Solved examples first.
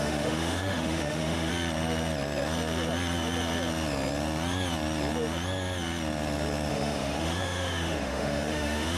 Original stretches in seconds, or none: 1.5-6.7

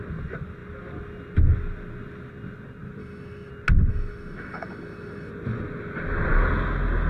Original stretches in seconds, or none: 0.0-3.0; 3.5-3.9; 5.3-7.1

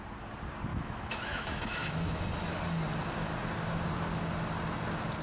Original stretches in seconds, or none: 0.0-0.7; 2.2-5.2

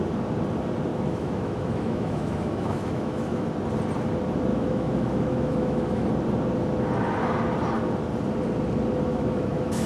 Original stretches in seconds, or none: 0.0-0.9; 3.5-4.5; 6.1-9.1